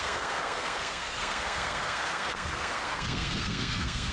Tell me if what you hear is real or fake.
fake